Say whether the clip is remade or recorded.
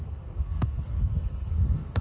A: remade